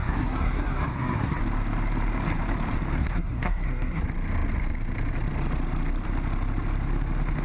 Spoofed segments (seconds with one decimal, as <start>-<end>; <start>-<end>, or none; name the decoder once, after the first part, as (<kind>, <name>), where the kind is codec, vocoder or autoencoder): 0.0-1.4 (codec, SNAC); 3.0-4.0